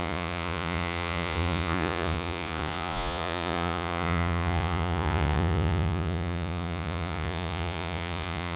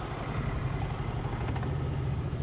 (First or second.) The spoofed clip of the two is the first